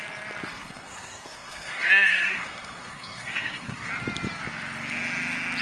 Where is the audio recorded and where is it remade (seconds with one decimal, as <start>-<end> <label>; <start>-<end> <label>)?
0.0-0.5 recorded; 0.5-3.9 remade; 3.9-5.6 recorded